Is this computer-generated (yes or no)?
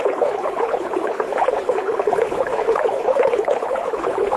yes